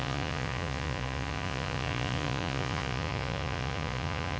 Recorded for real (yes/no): no